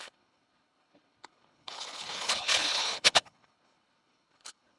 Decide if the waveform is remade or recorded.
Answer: remade